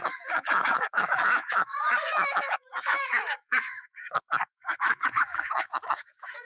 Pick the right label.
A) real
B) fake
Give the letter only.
B